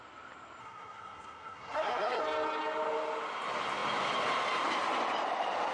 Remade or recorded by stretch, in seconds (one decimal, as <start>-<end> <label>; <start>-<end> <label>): 0.0-0.6 recorded; 0.6-2.2 remade; 2.2-5.7 recorded